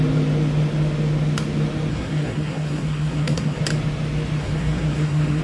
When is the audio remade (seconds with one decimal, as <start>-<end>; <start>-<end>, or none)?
1.9-3.6; 4.4-5.4